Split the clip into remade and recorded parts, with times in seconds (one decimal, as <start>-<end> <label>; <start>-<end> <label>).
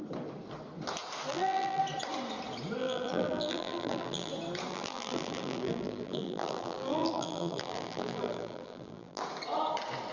0.0-1.3 recorded; 1.3-1.8 remade; 1.8-2.8 recorded; 2.8-4.3 remade; 4.3-4.7 recorded; 4.7-9.2 remade; 9.2-10.1 recorded